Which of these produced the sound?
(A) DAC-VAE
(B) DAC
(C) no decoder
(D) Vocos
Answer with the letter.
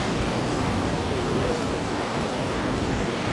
B